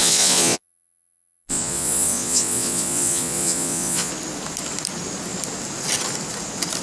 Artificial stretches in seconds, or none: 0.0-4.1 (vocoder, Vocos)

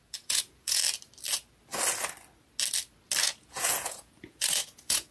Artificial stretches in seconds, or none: 0.0-0.8 (vocoder, Vocos); 3.2-5.1

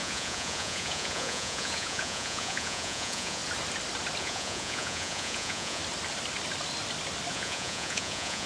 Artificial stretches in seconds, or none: 0.0-3.4 (vocoder, Vocos); 4.2-5.8; 7.3-8.5

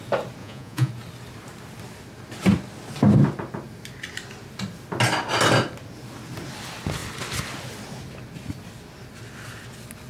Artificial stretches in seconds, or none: 0.4-0.9 (vocoder, Vocos)

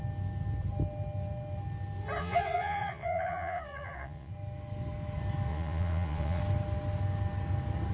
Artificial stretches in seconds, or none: 2.2-4.3 (vocoder, Vocos); 5.5-6.4

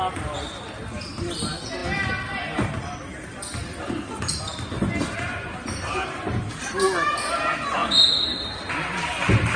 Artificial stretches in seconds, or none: none